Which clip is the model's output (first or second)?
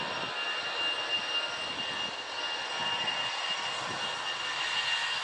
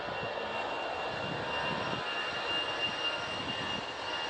second